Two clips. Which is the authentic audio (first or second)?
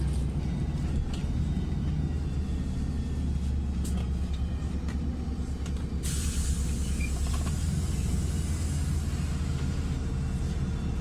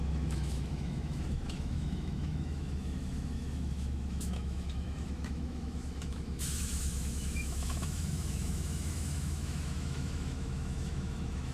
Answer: first